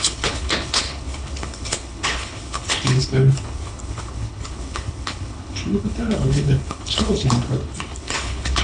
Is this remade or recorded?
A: remade